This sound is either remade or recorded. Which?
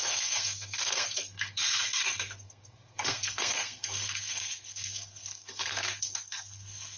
remade